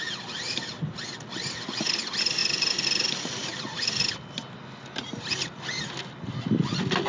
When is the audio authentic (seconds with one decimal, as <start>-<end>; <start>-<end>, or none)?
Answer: 0.0-7.1